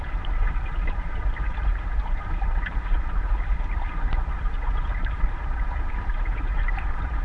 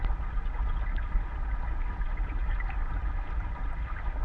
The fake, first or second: first